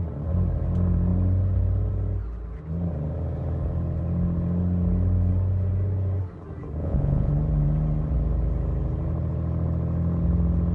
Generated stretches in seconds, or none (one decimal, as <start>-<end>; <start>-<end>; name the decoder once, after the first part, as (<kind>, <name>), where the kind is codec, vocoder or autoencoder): 6.8-7.3 (vocoder, Vocos)